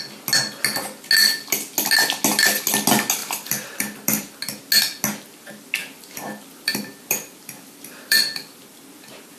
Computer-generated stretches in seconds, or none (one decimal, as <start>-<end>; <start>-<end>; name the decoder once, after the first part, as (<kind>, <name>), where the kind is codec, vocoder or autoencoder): 3.2-4.4 (vocoder, BigVGAN v2); 5.8-8.6